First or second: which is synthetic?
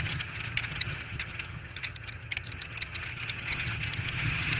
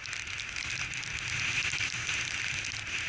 first